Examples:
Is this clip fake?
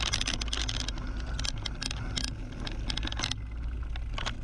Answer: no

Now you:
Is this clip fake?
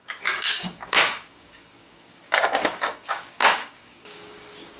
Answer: yes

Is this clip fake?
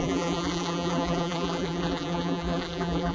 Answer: yes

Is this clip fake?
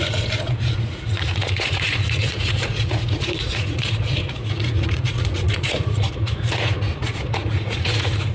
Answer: yes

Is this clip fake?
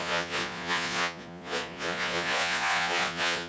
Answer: yes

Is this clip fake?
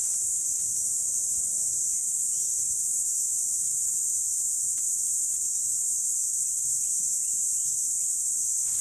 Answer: no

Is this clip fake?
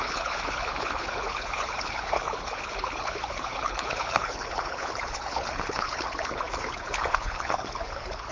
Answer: yes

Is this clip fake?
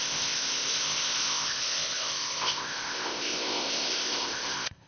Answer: yes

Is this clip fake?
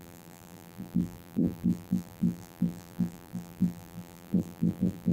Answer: yes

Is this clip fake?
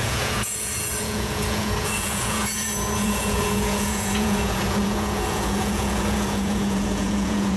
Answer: yes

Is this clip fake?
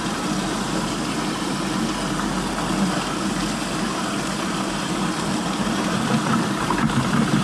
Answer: no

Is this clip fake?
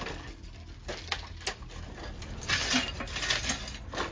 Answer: no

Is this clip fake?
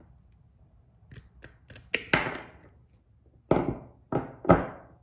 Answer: no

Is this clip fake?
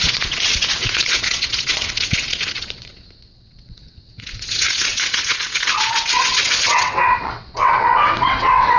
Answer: yes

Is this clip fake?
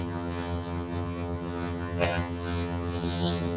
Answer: yes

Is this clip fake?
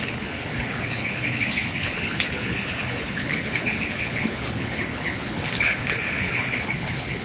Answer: yes